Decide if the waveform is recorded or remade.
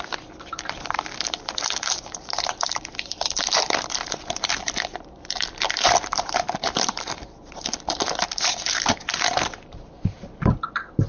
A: remade